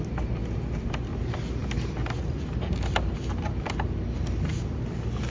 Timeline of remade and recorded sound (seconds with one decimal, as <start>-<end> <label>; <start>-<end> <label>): 0.0-5.3 recorded